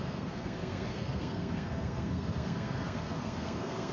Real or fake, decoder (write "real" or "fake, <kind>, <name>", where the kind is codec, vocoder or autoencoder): fake, codec, SNAC